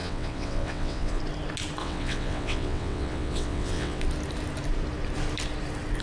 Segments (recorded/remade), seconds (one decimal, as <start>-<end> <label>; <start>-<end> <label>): 0.0-1.2 remade; 1.2-1.8 recorded; 1.8-4.0 remade; 4.0-6.0 recorded